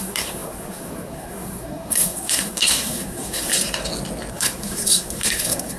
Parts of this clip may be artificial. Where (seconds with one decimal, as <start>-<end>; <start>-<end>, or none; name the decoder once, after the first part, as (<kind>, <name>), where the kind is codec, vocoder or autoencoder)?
0.0-3.5 (codec, SNAC); 4.3-5.8